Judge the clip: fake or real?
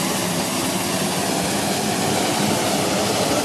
real